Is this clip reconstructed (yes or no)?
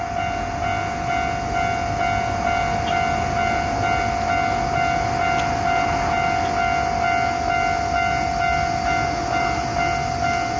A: no